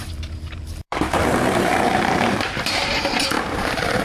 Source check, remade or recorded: remade